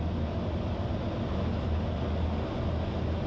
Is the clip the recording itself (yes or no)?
yes